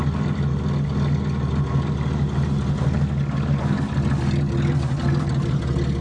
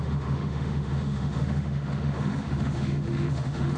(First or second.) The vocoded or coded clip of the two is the second